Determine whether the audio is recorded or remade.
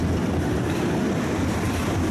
recorded